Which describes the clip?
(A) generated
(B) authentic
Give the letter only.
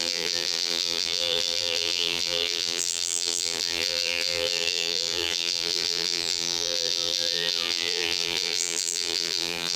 A